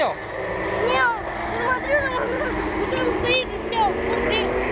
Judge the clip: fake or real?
real